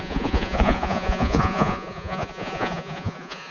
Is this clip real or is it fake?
fake